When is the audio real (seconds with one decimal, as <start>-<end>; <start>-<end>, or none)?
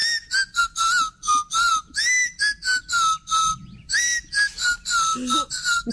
0.0-5.9